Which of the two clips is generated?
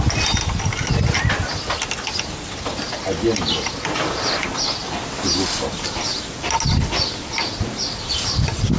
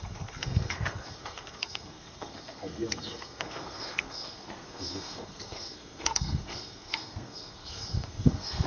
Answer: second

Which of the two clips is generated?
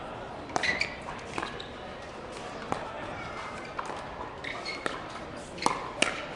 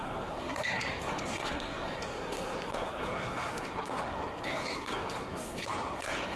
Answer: second